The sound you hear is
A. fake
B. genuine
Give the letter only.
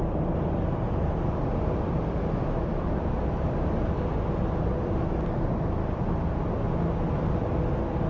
B